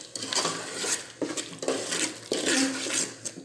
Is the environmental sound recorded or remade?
recorded